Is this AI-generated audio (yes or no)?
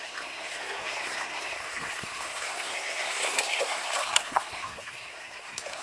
yes